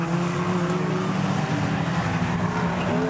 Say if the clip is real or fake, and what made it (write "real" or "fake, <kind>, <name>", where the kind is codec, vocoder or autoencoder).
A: real